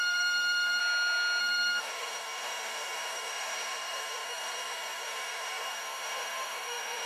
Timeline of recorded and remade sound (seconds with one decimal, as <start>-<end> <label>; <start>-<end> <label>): 0.0-0.8 remade; 0.8-1.4 recorded; 1.4-7.1 remade